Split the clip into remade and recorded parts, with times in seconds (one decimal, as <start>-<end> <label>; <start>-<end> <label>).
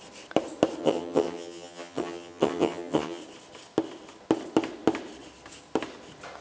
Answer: 0.0-0.8 recorded; 0.8-3.2 remade; 3.2-6.4 recorded